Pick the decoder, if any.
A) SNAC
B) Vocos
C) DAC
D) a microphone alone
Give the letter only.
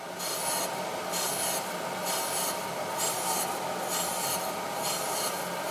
D